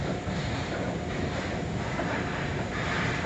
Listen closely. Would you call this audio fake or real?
real